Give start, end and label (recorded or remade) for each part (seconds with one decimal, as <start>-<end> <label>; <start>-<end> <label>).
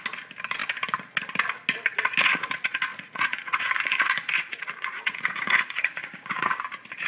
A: 0.0-2.9 recorded; 2.9-6.5 remade; 6.5-7.1 recorded